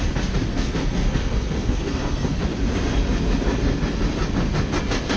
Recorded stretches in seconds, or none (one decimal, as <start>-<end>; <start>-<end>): 0.0-0.5; 2.4-5.2